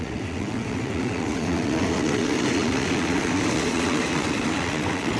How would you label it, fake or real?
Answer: fake